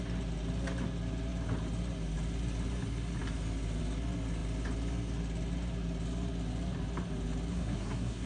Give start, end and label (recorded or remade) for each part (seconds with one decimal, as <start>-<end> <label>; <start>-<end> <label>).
0.0-7.5 recorded; 7.5-8.3 remade